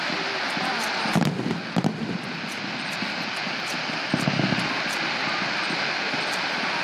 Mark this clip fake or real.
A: real